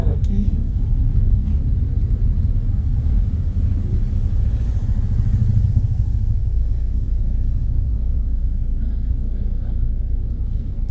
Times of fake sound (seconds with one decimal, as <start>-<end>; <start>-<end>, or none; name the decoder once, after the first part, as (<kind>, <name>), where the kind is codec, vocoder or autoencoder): 0.0-1.5 (codec, SNAC); 2.7-3.2; 5.7-10.9

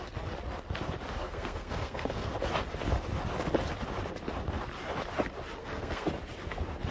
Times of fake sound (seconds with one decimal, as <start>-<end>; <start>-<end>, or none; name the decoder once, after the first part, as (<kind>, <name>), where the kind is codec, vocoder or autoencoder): 1.2-2.3 (codec, SNAC); 5.6-6.1

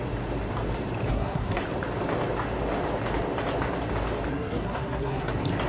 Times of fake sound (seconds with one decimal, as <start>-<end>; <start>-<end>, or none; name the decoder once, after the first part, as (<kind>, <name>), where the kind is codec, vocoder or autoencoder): 1.1-1.6 (codec, SNAC); 4.3-5.3

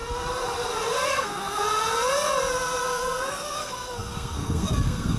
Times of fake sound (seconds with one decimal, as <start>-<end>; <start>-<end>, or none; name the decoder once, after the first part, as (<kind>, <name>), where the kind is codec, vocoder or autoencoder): 1.1-1.6 (codec, SNAC); 2.8-5.2

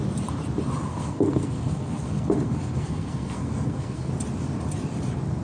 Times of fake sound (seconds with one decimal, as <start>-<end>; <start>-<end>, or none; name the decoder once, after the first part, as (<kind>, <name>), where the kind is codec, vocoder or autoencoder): 0.9-4.1 (codec, SNAC)

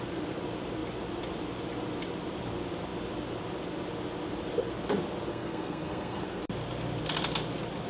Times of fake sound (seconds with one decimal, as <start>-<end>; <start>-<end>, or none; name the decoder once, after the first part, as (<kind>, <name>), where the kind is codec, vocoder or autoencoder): 5.3-6.4 (codec, SNAC)